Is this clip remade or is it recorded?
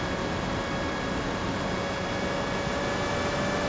recorded